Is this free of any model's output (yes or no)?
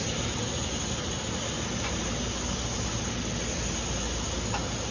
yes